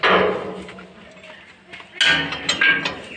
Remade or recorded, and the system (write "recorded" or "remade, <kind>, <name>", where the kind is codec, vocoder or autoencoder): recorded